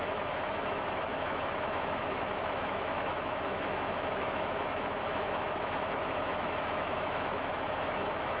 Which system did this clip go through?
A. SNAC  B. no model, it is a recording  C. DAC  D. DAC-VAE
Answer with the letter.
D